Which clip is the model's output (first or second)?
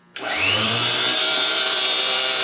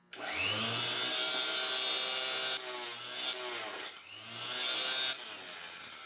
first